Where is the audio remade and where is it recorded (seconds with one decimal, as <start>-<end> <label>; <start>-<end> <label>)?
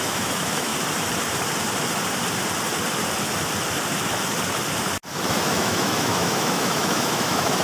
0.0-0.7 remade; 0.7-5.3 recorded; 5.3-7.6 remade